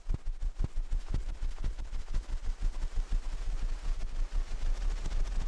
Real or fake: real